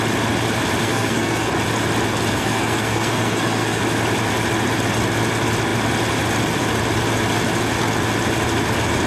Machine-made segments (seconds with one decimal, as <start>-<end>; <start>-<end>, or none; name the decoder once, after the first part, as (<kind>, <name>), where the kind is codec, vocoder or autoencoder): 0.8-1.5 (codec, SNAC); 2.3-3.8